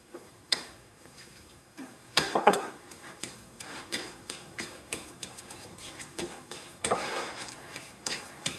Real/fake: fake